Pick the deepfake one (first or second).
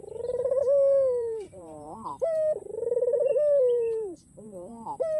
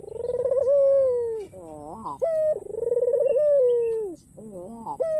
first